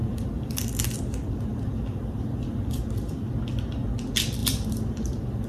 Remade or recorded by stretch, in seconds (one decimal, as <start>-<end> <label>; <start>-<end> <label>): 0.0-3.3 remade; 3.3-4.4 recorded; 4.4-5.5 remade